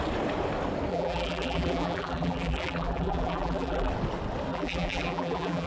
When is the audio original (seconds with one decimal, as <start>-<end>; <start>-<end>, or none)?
0.0-0.9; 3.9-4.5